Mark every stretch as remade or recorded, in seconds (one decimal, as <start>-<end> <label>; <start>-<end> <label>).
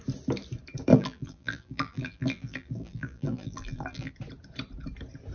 0.0-0.9 recorded; 0.9-4.1 remade; 4.1-5.3 recorded